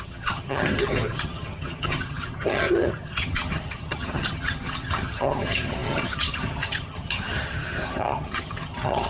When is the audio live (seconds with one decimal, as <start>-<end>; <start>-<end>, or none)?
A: none